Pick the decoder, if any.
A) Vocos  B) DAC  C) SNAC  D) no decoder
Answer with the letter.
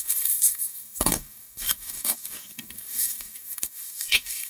B